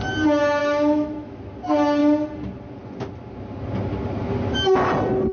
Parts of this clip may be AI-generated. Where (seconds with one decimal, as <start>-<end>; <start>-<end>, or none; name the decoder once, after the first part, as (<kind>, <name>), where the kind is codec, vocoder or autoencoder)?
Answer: 0.6-1.4 (autoencoder, DAC-VAE)